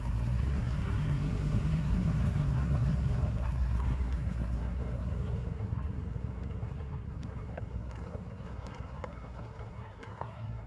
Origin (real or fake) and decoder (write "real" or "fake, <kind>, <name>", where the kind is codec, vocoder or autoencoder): fake, codec, SNAC